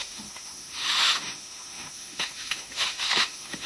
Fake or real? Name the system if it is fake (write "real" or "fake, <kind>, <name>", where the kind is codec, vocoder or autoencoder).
fake, autoencoder, DAC-VAE